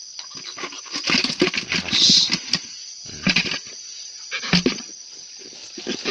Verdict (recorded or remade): recorded